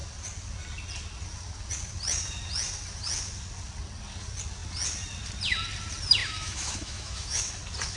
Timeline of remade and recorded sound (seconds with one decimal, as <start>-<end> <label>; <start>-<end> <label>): 0.0-6.2 recorded; 6.2-7.5 remade; 7.5-8.0 recorded